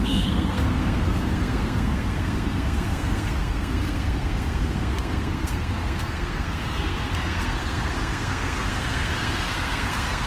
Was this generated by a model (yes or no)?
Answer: yes